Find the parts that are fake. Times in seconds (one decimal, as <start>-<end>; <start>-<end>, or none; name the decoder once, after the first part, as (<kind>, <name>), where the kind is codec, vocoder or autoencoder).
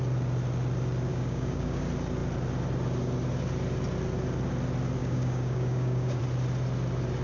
1.1-1.8 (codec, DAC); 5.0-6.2